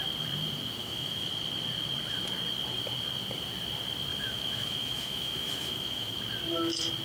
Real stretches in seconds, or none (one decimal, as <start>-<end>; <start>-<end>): 0.0-0.8; 1.3-4.1; 6.2-7.0